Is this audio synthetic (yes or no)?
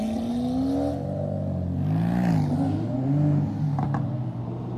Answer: no